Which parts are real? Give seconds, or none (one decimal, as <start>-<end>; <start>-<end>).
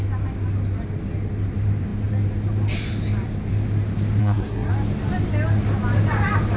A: 0.0-4.2; 4.7-6.6